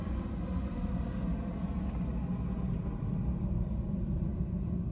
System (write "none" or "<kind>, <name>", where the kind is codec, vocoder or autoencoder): none